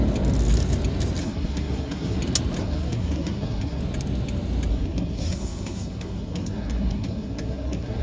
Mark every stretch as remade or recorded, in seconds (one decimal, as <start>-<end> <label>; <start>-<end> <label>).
0.0-1.2 recorded; 1.2-2.2 remade; 2.2-2.6 recorded; 2.6-3.8 remade; 3.8-4.7 recorded; 4.7-8.0 remade